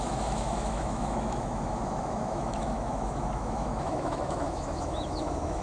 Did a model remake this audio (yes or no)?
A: yes